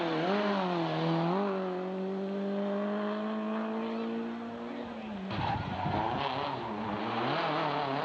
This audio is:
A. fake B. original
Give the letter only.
B